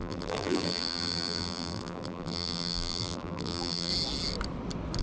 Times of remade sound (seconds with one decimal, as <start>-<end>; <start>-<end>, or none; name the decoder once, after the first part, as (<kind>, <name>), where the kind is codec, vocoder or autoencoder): 0.0-3.9 (vocoder, BigVGAN v2)